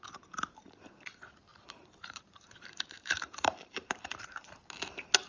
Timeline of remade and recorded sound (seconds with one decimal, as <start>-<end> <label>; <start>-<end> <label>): 0.0-1.5 recorded; 1.5-4.7 remade; 4.7-5.3 recorded